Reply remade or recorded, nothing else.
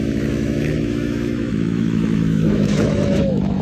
remade